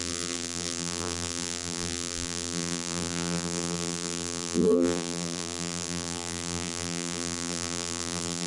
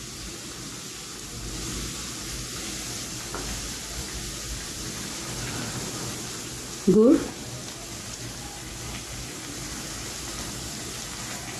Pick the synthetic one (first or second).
first